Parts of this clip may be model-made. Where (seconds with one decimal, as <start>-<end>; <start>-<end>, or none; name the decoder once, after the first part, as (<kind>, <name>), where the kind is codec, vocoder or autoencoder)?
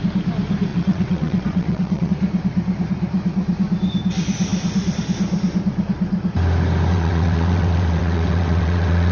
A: 0.7-2.1 (vocoder, WaveNeXt); 6.9-9.1